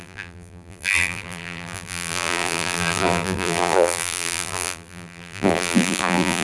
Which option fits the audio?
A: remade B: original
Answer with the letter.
A